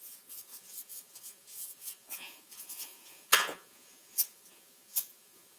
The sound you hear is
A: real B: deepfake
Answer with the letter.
B